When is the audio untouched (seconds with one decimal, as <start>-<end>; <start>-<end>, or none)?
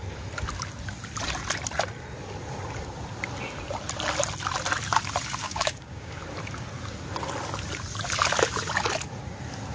0.0-5.4; 6.2-9.7